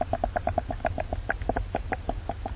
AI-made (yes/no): no